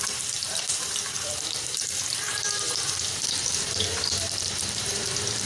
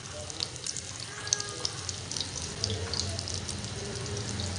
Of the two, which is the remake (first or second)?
first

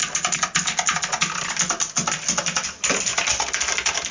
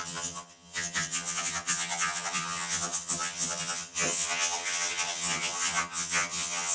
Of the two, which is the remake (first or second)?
second